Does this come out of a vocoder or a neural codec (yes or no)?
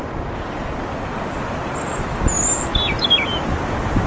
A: no